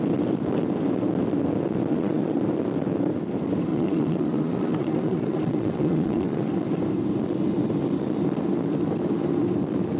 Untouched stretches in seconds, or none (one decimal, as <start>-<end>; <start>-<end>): 0.0-1.9; 2.4-3.7; 6.5-10.0